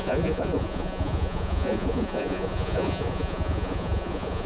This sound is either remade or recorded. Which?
remade